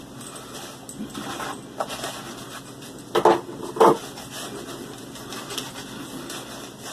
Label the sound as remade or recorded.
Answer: recorded